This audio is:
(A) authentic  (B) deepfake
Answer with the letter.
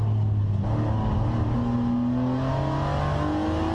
A